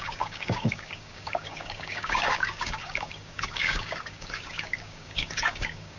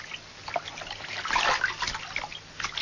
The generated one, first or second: first